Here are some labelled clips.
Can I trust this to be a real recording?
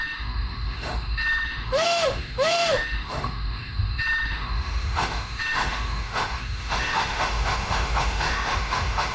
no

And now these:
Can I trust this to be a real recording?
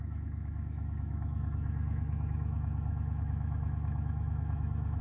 no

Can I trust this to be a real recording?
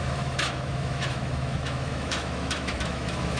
no